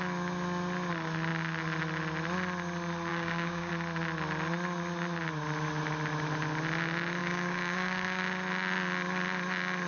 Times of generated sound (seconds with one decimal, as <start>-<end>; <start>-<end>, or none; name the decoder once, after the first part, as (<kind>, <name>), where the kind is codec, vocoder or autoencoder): 3.1-3.7 (codec, DAC); 7.2-8.2